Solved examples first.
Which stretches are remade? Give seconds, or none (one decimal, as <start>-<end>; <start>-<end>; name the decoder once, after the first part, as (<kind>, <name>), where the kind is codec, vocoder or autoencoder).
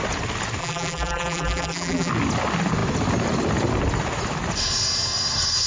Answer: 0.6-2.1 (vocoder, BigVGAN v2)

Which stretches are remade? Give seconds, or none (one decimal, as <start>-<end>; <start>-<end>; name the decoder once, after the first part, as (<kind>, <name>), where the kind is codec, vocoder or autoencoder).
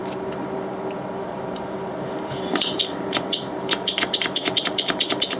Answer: 1.2-5.4 (vocoder, BigVGAN v2)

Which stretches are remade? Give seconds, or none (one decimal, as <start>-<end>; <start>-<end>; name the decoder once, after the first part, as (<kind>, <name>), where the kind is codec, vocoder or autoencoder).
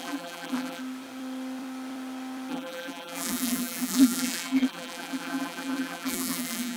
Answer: 0.0-0.8 (vocoder, BigVGAN v2); 2.5-6.8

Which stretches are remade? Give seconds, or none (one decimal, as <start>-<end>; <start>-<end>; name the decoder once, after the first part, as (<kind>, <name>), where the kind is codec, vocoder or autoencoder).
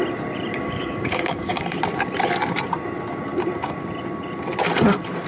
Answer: 0.5-1.8 (codec, DAC)